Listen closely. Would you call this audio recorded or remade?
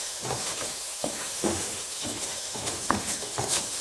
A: remade